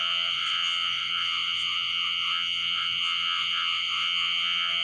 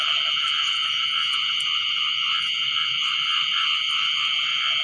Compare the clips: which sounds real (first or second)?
second